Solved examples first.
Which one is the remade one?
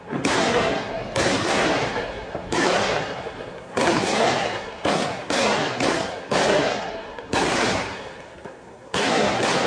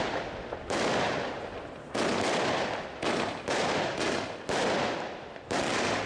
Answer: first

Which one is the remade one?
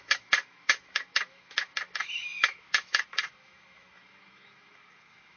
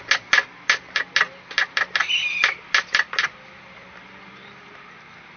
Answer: first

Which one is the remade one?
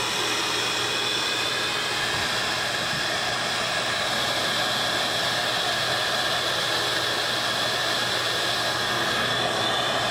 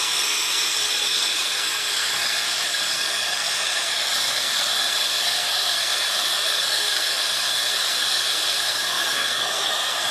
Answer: second